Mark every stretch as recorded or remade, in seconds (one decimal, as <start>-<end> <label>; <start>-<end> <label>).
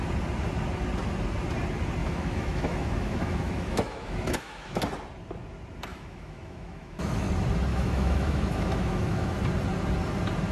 0.0-2.0 recorded; 2.0-4.8 remade; 4.8-5.9 recorded; 5.9-7.3 remade; 7.3-7.7 recorded; 7.7-9.4 remade; 9.4-10.5 recorded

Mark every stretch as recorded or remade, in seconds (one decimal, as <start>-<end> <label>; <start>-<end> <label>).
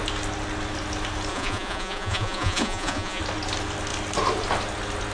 0.0-1.3 recorded; 1.3-3.2 remade; 3.2-5.1 recorded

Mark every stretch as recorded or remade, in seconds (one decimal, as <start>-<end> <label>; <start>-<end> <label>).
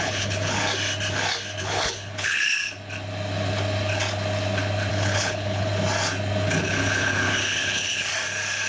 0.0-0.6 remade; 0.6-1.6 recorded; 1.6-2.6 remade; 2.6-4.9 recorded; 4.9-5.7 remade; 5.7-6.6 recorded; 6.6-8.1 remade; 8.1-8.7 recorded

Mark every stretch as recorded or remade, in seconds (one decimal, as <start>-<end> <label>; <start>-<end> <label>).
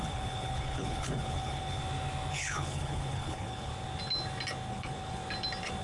0.0-1.8 remade; 1.8-2.3 recorded; 2.3-3.7 remade; 3.7-4.7 recorded; 4.7-5.2 remade; 5.2-5.8 recorded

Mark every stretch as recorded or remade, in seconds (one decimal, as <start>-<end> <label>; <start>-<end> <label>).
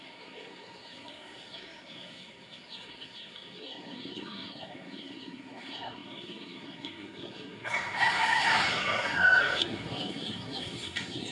0.0-11.3 remade